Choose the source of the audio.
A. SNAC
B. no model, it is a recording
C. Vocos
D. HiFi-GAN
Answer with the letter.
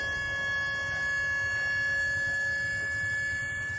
B